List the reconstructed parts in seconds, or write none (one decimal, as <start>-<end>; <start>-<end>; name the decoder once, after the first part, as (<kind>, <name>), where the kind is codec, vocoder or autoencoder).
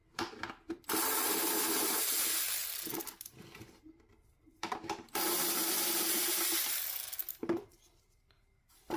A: 0.0-9.0 (vocoder, BigVGAN v2)